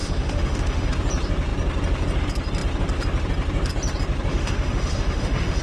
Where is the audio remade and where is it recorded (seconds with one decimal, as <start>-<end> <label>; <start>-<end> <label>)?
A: 0.0-0.9 remade; 0.9-4.3 recorded; 4.3-5.6 remade